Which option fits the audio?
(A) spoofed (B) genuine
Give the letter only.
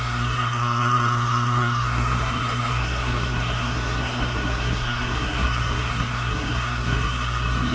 A